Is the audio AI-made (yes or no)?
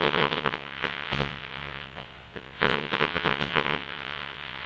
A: yes